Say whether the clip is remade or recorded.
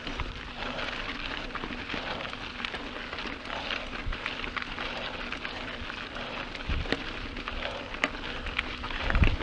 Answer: recorded